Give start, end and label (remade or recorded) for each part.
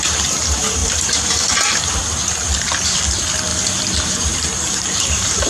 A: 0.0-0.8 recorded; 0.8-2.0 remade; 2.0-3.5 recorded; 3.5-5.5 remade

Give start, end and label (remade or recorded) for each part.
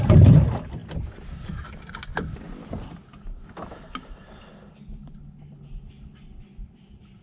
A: 0.0-7.2 recorded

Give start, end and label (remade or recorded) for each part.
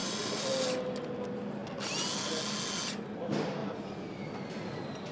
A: 0.0-0.5 remade; 0.5-3.6 recorded; 3.6-4.2 remade; 4.2-5.1 recorded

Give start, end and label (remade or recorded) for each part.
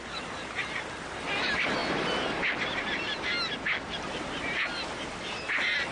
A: 0.0-0.6 remade; 0.6-1.3 recorded; 1.3-1.8 remade; 1.8-3.9 recorded; 3.9-5.9 remade